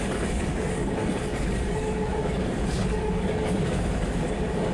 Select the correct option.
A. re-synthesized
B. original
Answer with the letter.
A